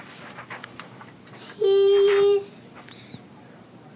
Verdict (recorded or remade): remade